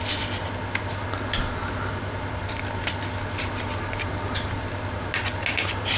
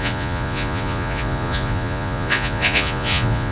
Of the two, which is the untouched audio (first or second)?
first